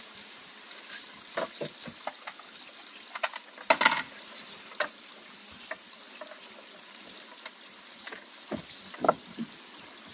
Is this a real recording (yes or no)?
yes